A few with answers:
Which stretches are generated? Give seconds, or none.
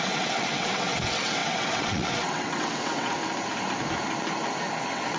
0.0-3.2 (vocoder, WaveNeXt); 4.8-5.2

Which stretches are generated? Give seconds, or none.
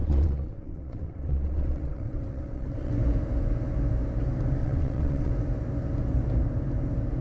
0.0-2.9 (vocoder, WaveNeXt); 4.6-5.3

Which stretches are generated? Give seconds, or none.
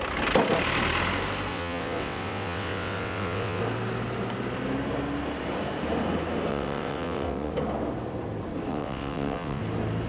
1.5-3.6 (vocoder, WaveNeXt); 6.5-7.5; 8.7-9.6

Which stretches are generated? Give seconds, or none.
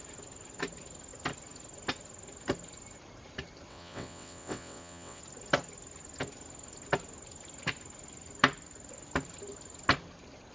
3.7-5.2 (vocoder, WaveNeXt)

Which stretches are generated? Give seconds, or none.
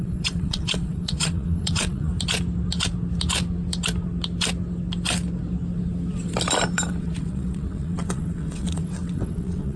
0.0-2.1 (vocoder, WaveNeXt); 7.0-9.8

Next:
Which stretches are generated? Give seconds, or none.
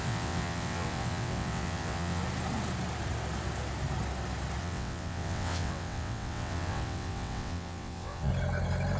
0.0-2.2 (vocoder, WaveNeXt); 4.6-8.3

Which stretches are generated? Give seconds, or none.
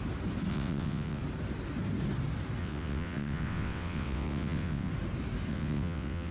0.5-1.2 (vocoder, WaveNeXt); 2.6-4.9; 5.5-6.3